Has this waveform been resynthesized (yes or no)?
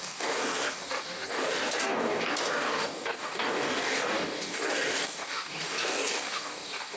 yes